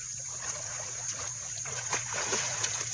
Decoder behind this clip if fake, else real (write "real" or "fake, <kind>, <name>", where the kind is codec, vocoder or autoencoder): fake, vocoder, Vocos